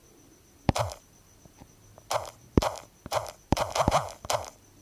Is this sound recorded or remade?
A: remade